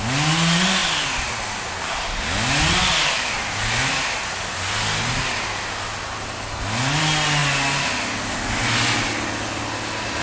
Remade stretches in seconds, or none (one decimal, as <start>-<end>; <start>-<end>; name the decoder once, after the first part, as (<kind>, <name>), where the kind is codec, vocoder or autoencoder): none